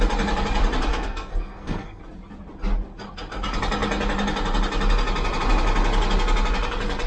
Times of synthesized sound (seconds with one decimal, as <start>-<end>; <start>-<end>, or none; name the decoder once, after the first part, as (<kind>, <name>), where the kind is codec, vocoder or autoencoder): 0.9-2.0 (codec, SNAC)